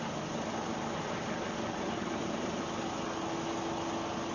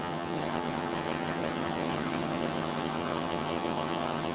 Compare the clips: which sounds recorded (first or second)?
first